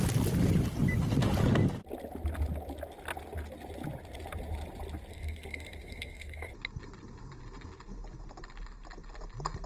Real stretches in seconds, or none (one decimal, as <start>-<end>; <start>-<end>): 0.0-5.1; 6.5-9.7